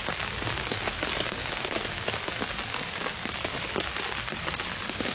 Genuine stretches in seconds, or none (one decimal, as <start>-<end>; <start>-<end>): 0.0-5.1